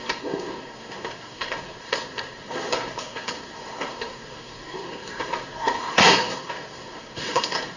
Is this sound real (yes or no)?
no